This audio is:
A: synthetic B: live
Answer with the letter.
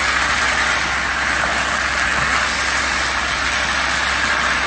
B